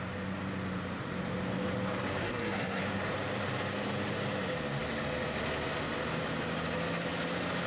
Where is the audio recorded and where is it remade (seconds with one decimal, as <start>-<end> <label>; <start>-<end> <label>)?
0.0-2.2 recorded; 2.2-2.8 remade; 2.8-7.7 recorded